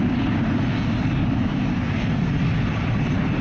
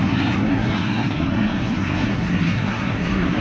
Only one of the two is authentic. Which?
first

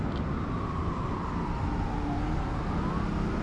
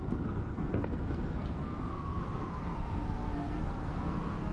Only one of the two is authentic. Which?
first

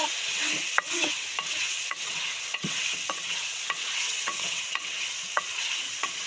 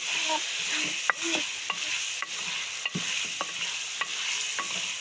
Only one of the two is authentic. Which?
second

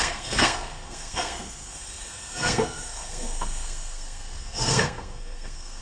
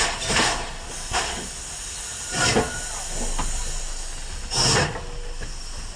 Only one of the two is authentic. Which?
second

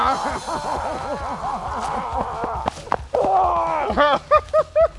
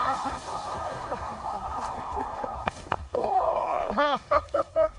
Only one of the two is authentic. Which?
first